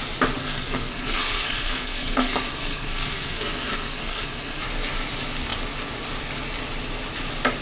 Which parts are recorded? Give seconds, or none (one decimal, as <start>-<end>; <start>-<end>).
0.0-0.4; 4.6-7.6